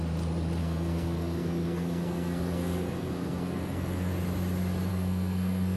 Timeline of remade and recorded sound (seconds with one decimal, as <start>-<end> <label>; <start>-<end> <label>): 0.0-0.6 recorded; 0.6-4.1 remade; 4.1-4.9 recorded; 4.9-5.8 remade